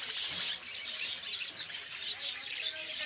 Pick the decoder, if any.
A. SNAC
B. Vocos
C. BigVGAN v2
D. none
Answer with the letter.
C